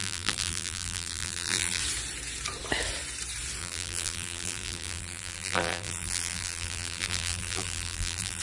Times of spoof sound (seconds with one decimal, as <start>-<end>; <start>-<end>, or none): 0.0-1.8; 3.6-8.4